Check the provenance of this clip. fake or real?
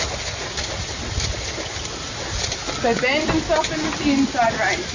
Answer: real